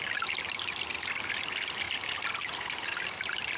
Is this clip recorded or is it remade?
recorded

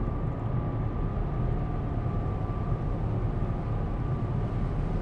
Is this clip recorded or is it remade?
recorded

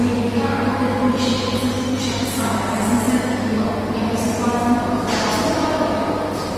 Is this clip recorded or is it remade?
recorded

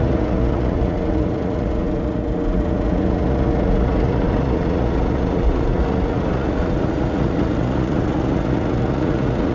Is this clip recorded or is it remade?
remade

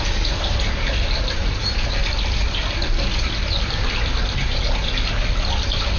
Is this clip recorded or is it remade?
recorded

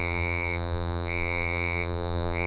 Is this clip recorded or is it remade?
remade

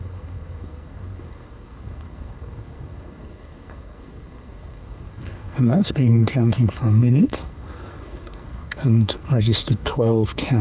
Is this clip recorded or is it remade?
remade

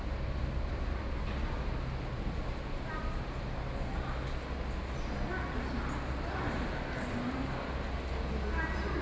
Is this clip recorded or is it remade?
recorded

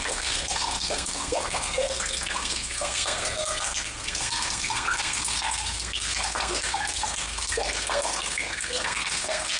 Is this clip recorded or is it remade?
remade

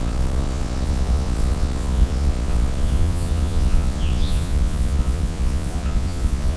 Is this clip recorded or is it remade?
remade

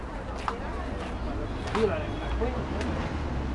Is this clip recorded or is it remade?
recorded